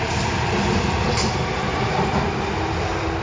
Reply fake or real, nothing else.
real